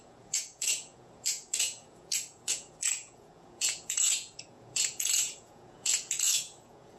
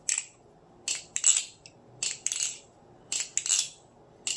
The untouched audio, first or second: second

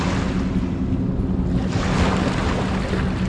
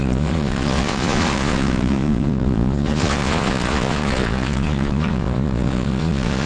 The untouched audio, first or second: first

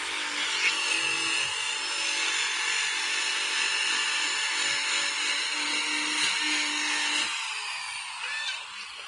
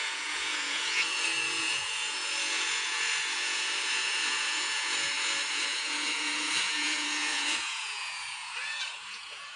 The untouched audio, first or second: first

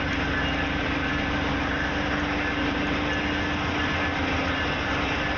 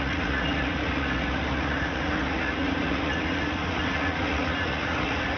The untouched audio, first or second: first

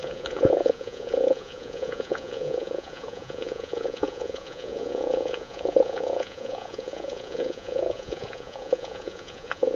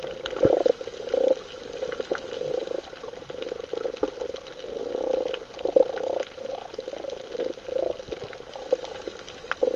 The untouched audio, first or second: second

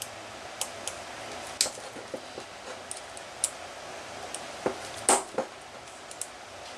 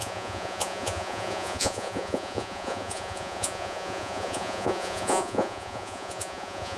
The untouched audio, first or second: first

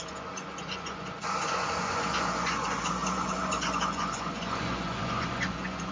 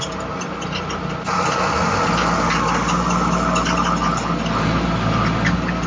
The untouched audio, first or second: second